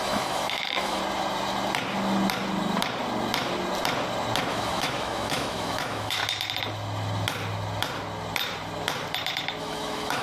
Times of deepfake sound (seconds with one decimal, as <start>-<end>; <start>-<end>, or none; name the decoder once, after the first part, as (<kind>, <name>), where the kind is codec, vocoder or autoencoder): 0.0-1.0 (autoencoder, DAC-VAE); 4.5-6.2; 9.6-10.2